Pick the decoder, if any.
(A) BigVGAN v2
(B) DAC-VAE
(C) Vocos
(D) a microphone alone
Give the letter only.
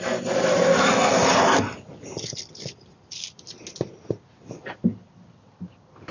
D